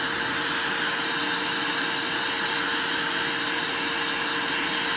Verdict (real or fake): real